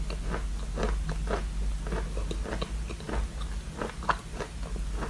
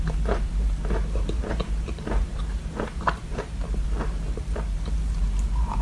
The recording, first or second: first